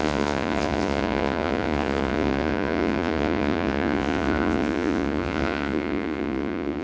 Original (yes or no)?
no